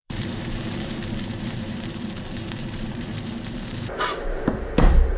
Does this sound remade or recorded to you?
remade